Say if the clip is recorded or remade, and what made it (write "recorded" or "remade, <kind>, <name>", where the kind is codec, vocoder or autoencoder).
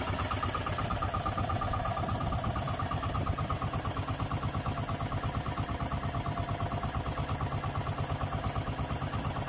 recorded